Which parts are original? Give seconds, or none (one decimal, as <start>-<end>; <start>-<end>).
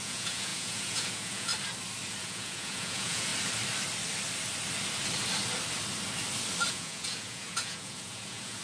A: 1.5-2.2; 3.3-6.7